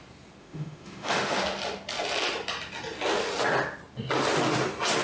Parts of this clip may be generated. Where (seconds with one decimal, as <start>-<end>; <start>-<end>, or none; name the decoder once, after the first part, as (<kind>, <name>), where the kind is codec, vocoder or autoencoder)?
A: 0.4-1.4 (autoencoder, DAC-VAE)